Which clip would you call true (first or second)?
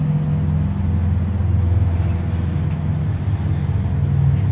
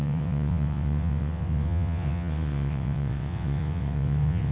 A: first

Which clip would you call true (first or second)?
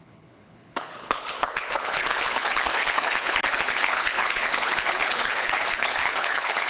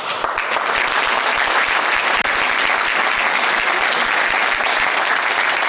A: second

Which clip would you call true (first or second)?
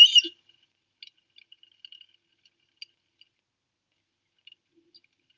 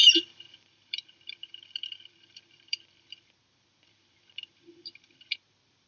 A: first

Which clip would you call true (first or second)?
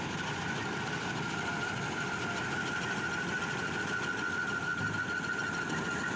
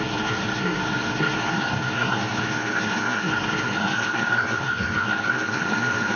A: first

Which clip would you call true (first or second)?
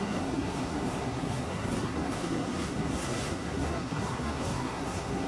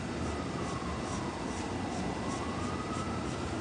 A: second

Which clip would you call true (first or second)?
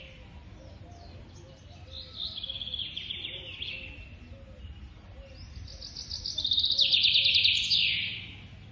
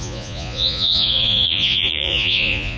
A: first